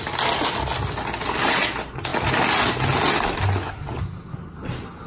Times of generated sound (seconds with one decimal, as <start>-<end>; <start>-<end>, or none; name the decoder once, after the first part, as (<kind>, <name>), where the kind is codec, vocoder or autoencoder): none